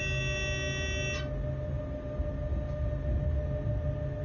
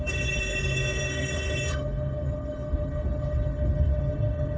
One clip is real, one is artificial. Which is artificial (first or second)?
second